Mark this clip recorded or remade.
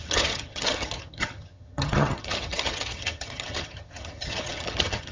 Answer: remade